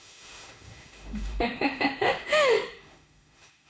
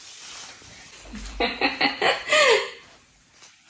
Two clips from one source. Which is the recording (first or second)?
second